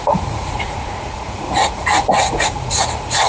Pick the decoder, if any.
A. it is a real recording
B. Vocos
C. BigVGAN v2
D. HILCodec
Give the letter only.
B